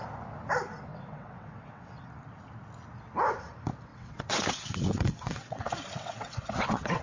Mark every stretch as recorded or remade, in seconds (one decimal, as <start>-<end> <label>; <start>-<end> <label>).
0.0-0.9 recorded; 0.9-2.1 remade; 2.1-3.9 recorded; 3.9-7.0 remade